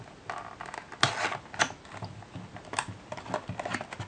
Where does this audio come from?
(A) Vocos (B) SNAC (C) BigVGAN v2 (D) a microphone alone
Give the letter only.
D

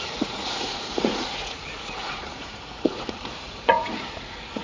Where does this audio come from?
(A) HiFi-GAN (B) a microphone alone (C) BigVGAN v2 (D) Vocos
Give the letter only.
D